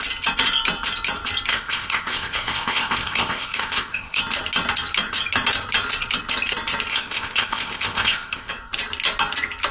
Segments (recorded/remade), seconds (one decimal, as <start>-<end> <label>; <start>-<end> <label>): 0.0-1.5 recorded; 1.5-4.2 remade; 4.2-6.9 recorded; 6.9-8.5 remade; 8.5-9.7 recorded

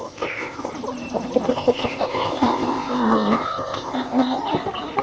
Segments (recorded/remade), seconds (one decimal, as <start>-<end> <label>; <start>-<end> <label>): 0.0-0.7 remade; 0.7-1.5 recorded; 1.5-4.4 remade; 4.4-5.0 recorded

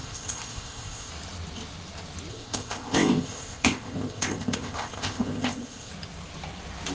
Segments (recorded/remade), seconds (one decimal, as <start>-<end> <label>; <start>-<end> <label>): 0.0-1.1 remade; 1.1-2.3 recorded; 2.3-5.9 remade; 5.9-6.9 recorded

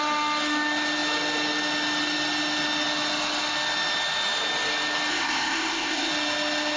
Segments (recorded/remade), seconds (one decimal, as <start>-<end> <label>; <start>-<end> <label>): 0.0-5.1 recorded; 5.1-6.1 remade; 6.1-6.8 recorded

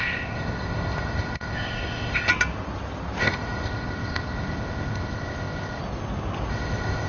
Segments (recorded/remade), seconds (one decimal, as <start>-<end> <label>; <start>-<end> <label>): 0.0-2.3 remade; 2.3-3.2 recorded; 3.2-5.8 remade; 5.8-6.5 recorded; 6.5-7.1 remade

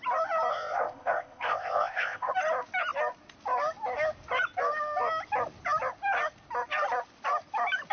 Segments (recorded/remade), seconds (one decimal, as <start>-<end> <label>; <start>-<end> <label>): 0.0-0.5 recorded; 0.5-2.3 remade; 2.3-7.9 recorded

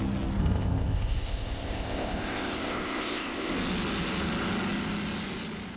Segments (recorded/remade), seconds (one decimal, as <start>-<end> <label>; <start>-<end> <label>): 0.0-0.4 recorded; 0.4-3.5 remade; 3.5-5.8 recorded

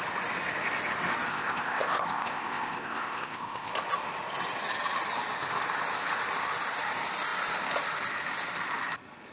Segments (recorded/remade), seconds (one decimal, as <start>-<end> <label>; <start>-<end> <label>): 0.0-1.3 recorded; 1.3-3.7 remade; 3.7-9.3 recorded